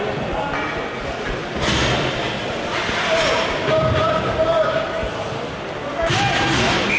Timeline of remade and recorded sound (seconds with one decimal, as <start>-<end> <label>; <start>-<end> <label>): 0.0-7.0 recorded